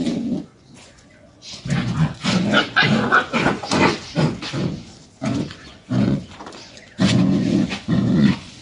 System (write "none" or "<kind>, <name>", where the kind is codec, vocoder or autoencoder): vocoder, Vocos